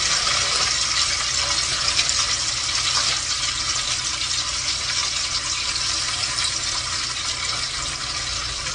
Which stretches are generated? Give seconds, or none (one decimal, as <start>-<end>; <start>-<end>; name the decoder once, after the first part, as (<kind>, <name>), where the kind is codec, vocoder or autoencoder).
none